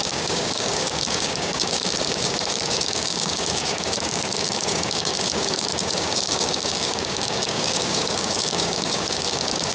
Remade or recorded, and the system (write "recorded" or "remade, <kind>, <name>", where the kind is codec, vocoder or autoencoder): remade, codec, DAC